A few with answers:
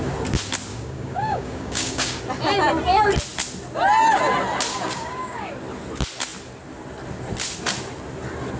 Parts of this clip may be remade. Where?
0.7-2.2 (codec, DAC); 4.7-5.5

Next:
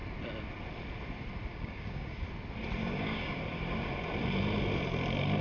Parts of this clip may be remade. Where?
1.5-2.2 (codec, DAC); 2.8-3.4

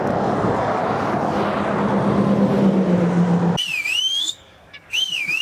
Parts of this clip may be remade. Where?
0.0-0.8 (codec, DAC); 4.0-5.4

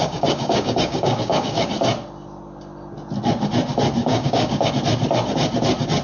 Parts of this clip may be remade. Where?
0.0-1.7 (codec, DAC); 4.0-4.7

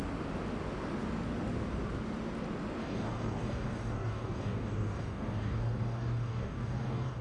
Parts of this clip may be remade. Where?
2.8-7.2 (codec, DAC)